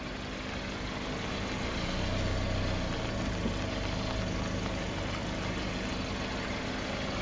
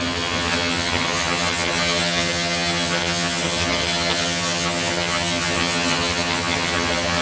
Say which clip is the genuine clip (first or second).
first